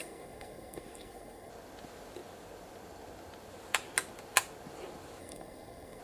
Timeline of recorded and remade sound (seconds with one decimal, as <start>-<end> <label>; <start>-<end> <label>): 0.0-1.5 remade; 1.5-5.2 recorded; 5.2-6.0 remade